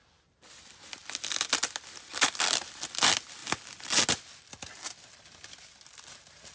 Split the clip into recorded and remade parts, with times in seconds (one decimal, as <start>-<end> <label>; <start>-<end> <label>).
0.0-6.5 recorded